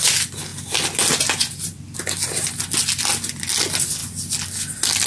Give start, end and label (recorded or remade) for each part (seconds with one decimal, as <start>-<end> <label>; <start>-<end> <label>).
0.0-5.1 recorded